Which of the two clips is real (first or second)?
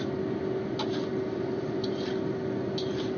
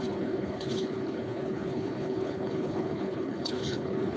first